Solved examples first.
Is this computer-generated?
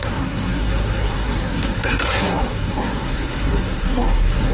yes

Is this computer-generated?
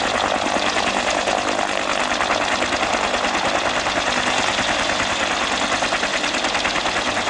no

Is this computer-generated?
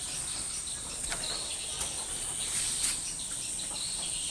no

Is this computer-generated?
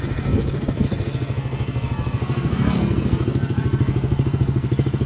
yes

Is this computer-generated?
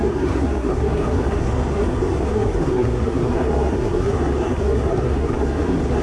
yes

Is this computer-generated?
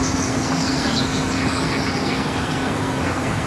yes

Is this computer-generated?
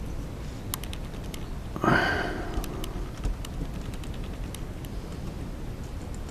no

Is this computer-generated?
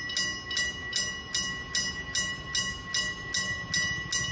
no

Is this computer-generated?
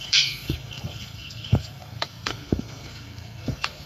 yes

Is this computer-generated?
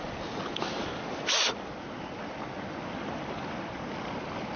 no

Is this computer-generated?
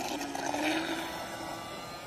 no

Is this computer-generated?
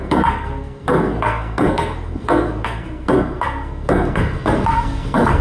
yes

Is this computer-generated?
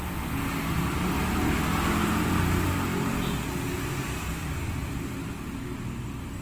no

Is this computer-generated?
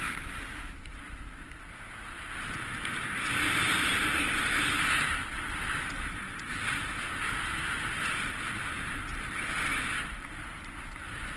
no